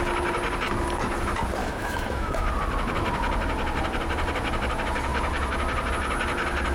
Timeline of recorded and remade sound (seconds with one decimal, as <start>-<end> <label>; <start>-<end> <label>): 0.0-1.6 recorded; 1.6-2.5 remade; 2.5-6.7 recorded